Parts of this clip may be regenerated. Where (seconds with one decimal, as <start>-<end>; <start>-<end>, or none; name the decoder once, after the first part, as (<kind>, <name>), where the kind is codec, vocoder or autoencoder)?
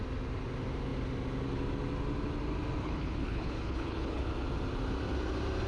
2.8-4.2 (codec, HILCodec)